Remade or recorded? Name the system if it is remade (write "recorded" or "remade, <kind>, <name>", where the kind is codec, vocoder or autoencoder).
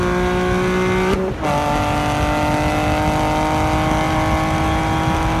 recorded